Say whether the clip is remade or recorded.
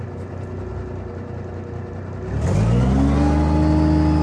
recorded